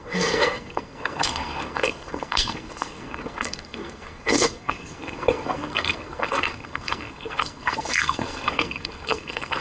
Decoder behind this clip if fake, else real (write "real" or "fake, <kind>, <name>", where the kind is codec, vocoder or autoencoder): fake, codec, SNAC